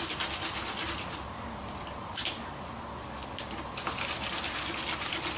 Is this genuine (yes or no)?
yes